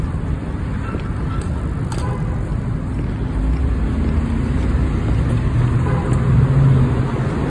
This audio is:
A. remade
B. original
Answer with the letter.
B